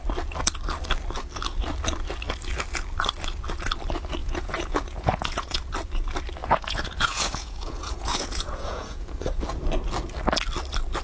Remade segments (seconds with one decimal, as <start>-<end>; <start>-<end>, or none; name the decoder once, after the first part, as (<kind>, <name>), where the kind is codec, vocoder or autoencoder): 4.2-5.6 (vocoder, Vocos); 6.4-9.4